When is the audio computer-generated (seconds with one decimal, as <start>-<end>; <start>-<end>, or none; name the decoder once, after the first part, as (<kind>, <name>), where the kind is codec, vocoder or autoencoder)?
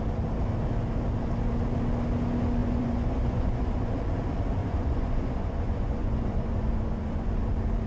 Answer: 2.6-3.9 (vocoder, Vocos); 4.6-7.3